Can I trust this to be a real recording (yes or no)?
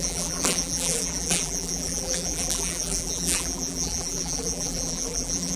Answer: no